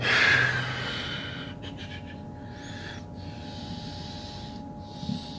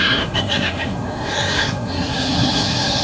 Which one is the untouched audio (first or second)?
first